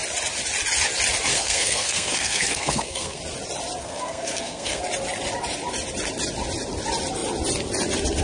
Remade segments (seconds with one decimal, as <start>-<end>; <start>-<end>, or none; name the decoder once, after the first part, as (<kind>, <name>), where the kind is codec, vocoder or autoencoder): 1.3-3.2 (codec, SNAC); 3.8-4.8